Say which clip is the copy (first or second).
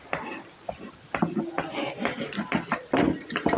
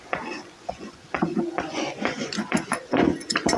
second